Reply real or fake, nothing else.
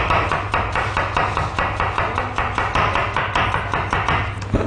real